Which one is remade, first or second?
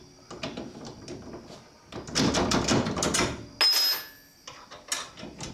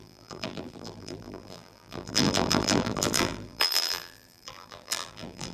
second